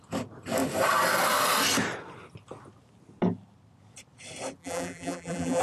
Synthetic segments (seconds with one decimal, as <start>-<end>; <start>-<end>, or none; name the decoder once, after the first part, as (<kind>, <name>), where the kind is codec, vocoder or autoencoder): 4.6-5.6 (vocoder, BigVGAN v2)